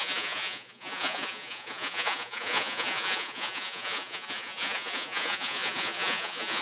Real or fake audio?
fake